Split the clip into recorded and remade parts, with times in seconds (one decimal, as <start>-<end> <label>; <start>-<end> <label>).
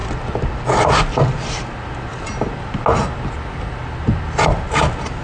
0.0-5.2 recorded